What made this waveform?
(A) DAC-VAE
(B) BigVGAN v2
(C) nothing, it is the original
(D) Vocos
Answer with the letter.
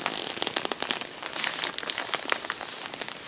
C